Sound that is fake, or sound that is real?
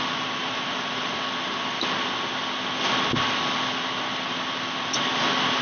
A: real